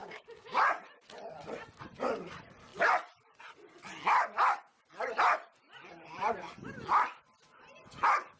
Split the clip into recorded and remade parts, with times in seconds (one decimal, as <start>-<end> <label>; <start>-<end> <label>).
0.0-0.6 remade; 0.6-8.4 recorded